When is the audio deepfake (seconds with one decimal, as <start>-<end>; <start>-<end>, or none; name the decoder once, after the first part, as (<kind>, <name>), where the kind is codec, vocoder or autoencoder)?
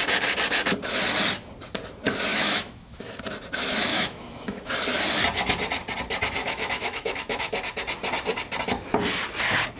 2.3-3.2 (autoencoder, DAC-VAE); 3.9-4.7; 6.4-7.5